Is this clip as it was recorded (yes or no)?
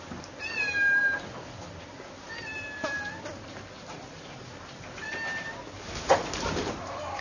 yes